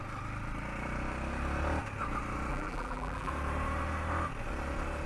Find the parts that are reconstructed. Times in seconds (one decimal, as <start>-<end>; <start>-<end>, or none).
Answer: 2.5-3.3